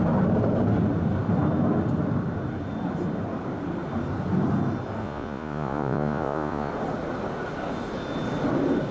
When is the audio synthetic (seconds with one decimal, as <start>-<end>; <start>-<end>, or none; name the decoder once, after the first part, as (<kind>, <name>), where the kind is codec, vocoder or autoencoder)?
5.0-6.7 (vocoder, Vocos)